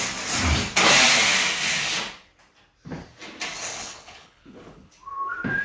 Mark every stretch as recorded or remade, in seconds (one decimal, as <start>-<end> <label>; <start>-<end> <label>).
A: 0.0-3.7 recorded; 3.7-4.9 remade; 4.9-5.6 recorded